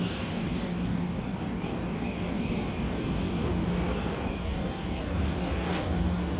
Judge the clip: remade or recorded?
remade